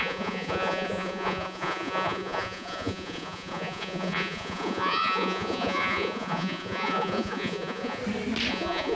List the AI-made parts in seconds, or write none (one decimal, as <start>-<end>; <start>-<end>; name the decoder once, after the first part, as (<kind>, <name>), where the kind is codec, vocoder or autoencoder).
0.0-8.0 (vocoder, Vocos); 8.5-8.9